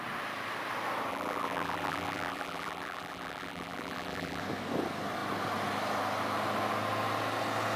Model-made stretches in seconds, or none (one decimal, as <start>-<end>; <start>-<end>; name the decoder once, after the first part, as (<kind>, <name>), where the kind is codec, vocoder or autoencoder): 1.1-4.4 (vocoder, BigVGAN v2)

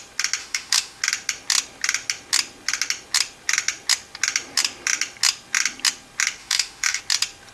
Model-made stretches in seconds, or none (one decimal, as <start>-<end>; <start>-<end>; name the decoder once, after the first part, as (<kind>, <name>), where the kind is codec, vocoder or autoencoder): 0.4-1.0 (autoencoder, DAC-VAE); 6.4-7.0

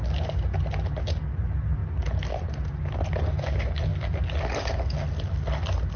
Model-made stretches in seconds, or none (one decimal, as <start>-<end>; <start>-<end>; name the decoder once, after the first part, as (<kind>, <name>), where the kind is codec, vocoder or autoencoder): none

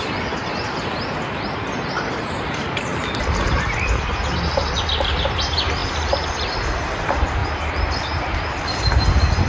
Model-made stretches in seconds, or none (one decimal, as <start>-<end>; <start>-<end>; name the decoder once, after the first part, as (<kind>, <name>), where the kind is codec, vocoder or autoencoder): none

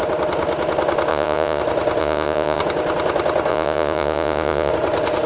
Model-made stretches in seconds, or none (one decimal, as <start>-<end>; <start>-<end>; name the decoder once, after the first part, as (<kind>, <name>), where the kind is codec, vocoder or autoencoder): 1.1-1.6 (vocoder, Vocos); 2.0-2.6; 3.5-4.7